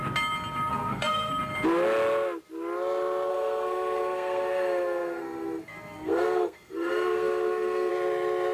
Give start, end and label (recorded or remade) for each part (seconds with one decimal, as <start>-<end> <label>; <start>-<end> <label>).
0.0-0.7 recorded; 0.7-1.3 remade; 1.3-3.3 recorded; 3.3-7.9 remade; 7.9-8.5 recorded